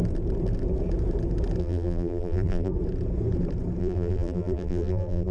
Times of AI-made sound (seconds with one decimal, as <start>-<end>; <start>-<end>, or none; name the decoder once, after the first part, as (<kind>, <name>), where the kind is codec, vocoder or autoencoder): 1.6-2.7 (vocoder, BigVGAN v2); 3.8-5.3